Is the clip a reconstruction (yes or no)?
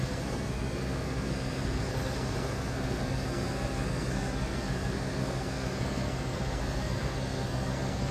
yes